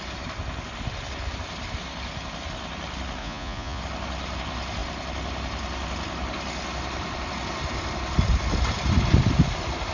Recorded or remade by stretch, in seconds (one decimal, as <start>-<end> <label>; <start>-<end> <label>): 0.0-3.2 recorded; 3.2-3.8 remade; 3.8-9.9 recorded